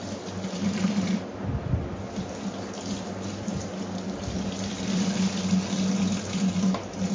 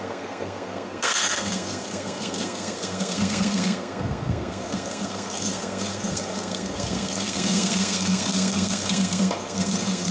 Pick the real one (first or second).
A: first